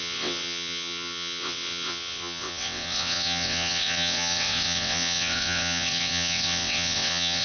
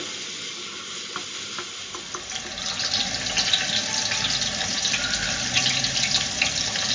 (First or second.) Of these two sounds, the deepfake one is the first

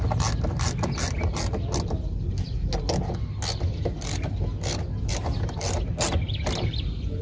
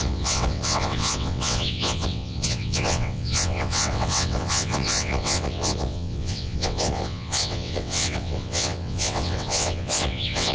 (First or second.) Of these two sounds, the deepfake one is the second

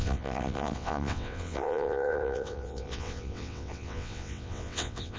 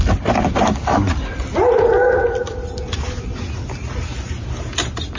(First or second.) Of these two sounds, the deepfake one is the first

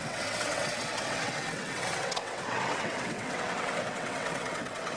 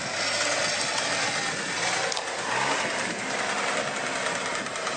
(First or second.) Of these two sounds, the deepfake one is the first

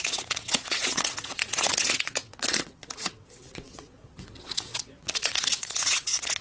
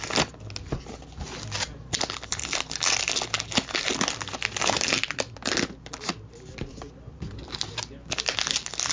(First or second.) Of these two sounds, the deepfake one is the first